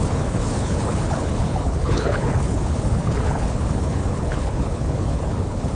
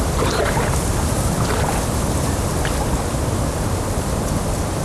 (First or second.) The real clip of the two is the second